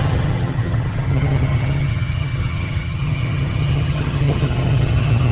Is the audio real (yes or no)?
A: no